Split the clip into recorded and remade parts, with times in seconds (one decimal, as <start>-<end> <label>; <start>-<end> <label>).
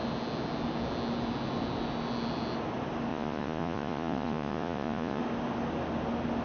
0.0-3.1 recorded; 3.1-5.2 remade; 5.2-6.4 recorded